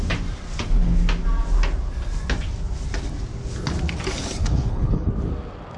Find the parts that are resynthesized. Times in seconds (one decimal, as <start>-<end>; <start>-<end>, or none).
4.4-5.1